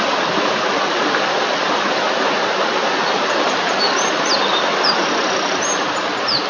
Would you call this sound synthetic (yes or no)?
no